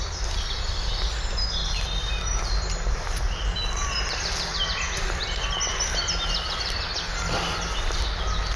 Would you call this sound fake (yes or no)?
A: no